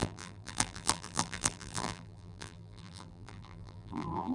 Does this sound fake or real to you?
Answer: fake